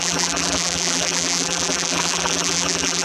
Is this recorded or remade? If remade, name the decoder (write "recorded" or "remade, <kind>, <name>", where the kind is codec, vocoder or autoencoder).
remade, vocoder, BigVGAN v2